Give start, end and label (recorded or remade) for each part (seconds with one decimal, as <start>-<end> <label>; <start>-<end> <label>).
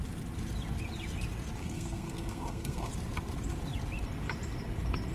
0.0-1.6 recorded; 1.6-2.9 remade; 2.9-5.1 recorded